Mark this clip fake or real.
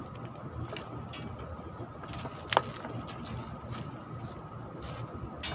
real